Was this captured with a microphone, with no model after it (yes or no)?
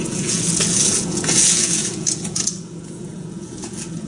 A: no